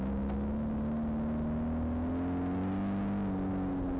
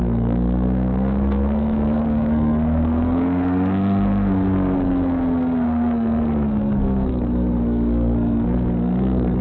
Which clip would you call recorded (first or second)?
first